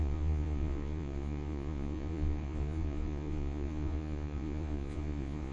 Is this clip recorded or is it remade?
remade